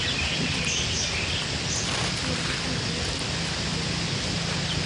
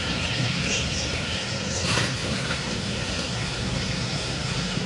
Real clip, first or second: first